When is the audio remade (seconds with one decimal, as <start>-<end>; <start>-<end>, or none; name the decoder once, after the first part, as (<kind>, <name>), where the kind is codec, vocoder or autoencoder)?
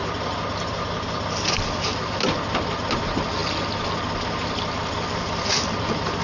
none